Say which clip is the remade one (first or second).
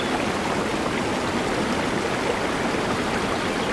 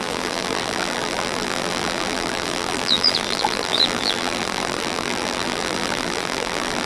second